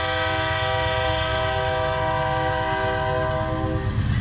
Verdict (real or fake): real